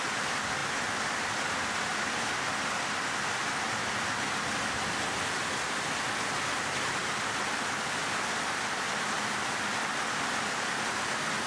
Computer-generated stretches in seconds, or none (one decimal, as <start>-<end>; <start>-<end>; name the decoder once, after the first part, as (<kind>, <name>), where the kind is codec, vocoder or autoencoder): none